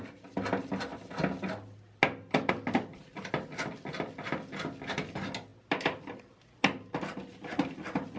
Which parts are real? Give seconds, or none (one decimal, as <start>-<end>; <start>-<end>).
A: 0.0-8.2